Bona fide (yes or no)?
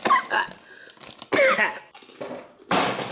yes